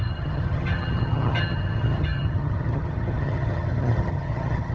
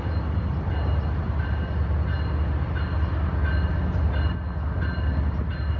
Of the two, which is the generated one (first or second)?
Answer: first